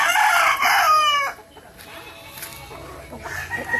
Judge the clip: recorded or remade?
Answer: recorded